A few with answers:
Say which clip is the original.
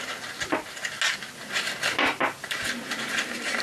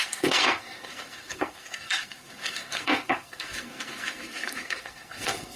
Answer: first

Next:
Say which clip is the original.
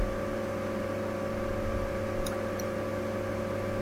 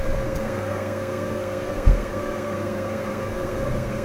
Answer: first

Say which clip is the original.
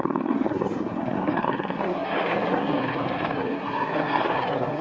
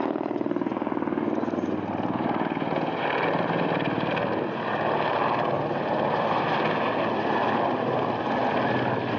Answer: second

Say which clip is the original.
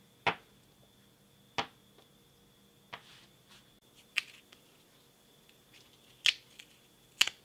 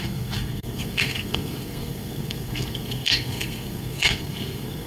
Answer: first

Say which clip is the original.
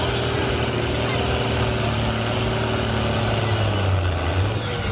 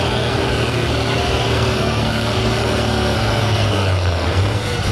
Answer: first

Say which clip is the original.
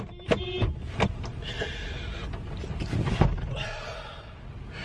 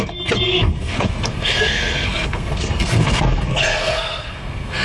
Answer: first